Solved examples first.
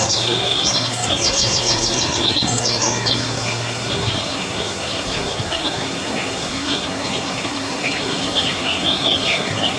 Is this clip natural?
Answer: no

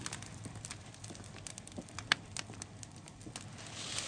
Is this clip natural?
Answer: yes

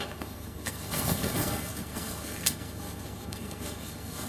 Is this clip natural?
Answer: no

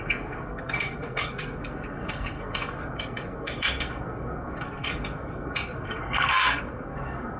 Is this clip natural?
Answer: no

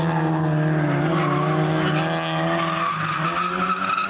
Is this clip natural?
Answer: yes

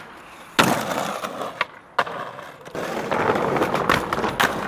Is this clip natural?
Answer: yes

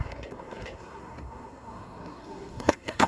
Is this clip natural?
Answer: no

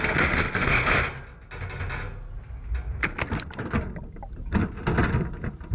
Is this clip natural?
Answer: yes